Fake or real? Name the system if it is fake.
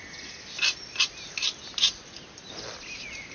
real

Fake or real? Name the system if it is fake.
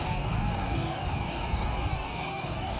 fake, codec, DAC